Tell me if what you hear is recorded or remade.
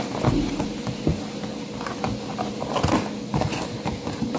recorded